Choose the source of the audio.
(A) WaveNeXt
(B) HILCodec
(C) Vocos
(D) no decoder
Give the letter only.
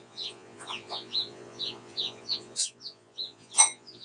C